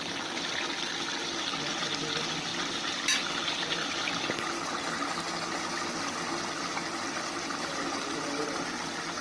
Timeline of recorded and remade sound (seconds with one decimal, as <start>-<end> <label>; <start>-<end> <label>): 0.0-9.2 recorded